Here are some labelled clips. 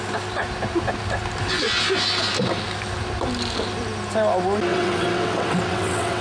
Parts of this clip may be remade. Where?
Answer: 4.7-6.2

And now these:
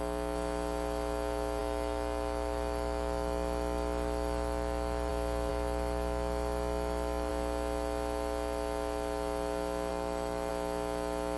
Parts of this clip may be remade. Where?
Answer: 1.6-5.1; 5.5-7.3; 9.9-10.5